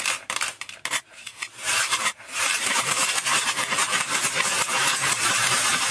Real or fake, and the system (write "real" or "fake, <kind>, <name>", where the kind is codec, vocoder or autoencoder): fake, vocoder, BigVGAN v2